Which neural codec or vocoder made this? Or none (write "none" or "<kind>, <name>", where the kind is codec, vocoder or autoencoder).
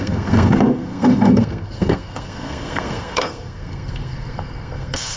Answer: codec, SNAC